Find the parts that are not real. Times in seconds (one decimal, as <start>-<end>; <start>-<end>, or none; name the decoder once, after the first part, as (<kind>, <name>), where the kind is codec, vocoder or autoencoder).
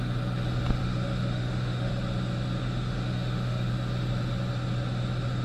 0.8-1.9 (autoencoder, DAC-VAE); 2.6-3.7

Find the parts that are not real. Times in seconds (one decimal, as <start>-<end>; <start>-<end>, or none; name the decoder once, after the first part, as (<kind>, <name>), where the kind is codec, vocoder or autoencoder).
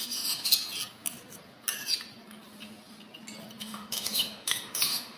0.0-0.5 (autoencoder, DAC-VAE); 3.6-5.2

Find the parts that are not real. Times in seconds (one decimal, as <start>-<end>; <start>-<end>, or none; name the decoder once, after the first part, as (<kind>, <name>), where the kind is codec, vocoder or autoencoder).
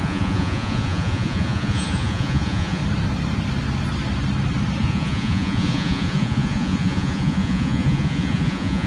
0.0-2.8 (vocoder, Vocos); 4.8-8.9